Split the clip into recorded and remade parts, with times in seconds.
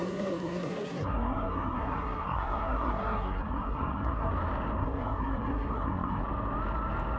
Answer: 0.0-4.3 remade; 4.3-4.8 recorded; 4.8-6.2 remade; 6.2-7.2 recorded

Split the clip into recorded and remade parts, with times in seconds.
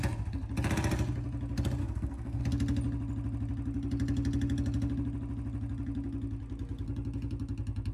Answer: 0.0-1.8 recorded; 1.8-2.4 remade; 2.4-7.9 recorded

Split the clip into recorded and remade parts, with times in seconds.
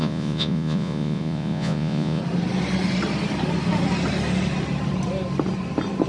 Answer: 0.0-2.2 remade; 2.2-6.1 recorded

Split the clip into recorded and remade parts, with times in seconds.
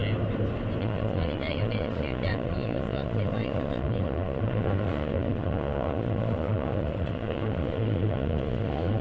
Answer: 0.0-0.8 recorded; 0.8-9.0 remade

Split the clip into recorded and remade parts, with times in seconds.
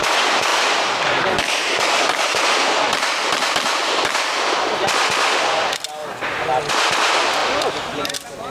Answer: 0.0-8.5 recorded